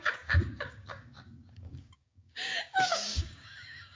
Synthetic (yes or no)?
yes